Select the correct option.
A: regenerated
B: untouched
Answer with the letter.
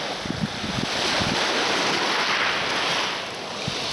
B